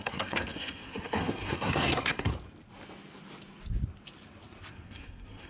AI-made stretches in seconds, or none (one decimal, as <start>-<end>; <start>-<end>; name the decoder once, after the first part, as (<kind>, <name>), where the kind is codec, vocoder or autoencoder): 0.0-2.3 (codec, SNAC); 4.7-5.5

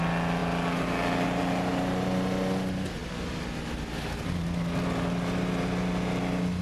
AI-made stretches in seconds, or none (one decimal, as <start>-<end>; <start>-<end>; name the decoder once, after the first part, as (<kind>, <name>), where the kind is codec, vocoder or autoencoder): none

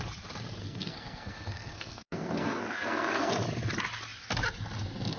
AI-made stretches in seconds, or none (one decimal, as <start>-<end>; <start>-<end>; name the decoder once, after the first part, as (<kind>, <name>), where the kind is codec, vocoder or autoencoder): 0.6-3.3 (codec, SNAC)

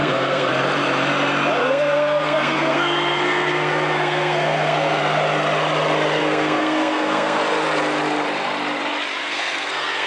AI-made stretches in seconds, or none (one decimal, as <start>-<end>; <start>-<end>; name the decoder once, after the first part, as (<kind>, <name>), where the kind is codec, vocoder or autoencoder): 0.0-0.5 (codec, SNAC); 1.6-5.0; 6.2-7.4; 9.2-10.1

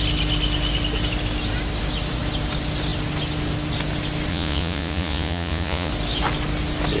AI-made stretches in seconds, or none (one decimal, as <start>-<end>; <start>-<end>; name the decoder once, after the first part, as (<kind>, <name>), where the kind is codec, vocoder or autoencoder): 4.3-5.9 (vocoder, Vocos)

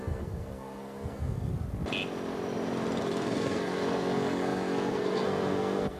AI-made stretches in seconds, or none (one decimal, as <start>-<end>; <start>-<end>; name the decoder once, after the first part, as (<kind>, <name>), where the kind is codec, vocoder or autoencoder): 0.0-1.5 (codec, SNAC); 3.0-6.0